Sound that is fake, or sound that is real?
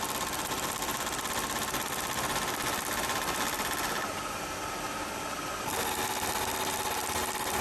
real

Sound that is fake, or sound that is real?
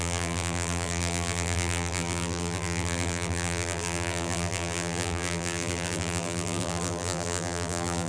fake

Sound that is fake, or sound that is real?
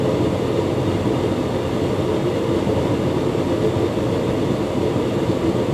real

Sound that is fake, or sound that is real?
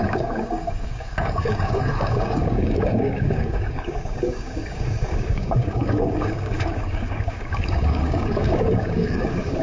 fake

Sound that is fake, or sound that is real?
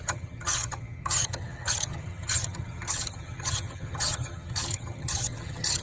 fake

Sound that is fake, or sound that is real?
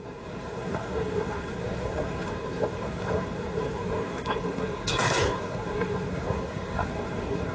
fake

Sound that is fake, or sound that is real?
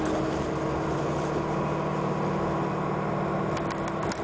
real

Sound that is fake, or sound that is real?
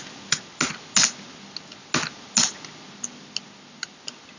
real